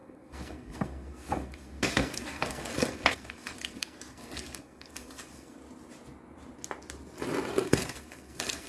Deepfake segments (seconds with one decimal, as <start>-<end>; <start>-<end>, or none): 0.0-5.6; 7.5-8.7